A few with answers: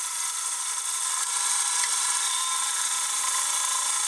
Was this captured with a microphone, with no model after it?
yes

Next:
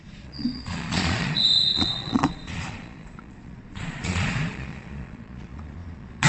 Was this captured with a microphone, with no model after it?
no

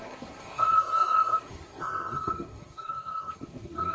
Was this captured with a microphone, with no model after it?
no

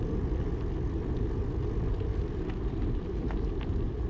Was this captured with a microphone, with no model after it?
yes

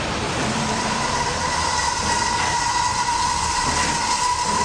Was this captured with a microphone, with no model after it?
no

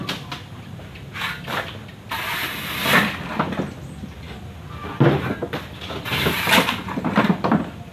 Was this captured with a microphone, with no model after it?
yes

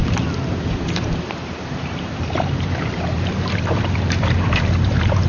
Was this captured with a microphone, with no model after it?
no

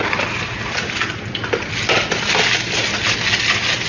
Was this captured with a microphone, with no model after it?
yes